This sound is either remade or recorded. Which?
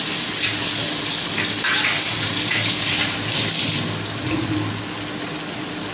recorded